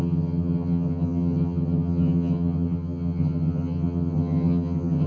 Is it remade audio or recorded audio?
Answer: remade